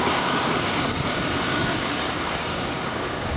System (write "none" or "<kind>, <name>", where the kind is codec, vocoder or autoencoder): codec, DAC